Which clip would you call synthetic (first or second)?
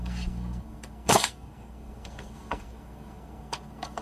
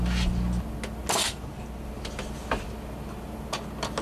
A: first